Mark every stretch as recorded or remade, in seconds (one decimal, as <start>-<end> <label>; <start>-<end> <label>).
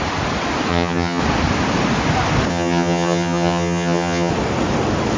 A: 0.0-0.7 recorded; 0.7-1.2 remade; 1.2-2.5 recorded; 2.5-4.3 remade; 4.3-5.2 recorded